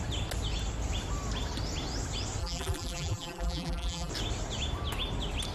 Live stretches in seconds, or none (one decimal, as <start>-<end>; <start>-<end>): 0.0-2.4; 4.1-5.5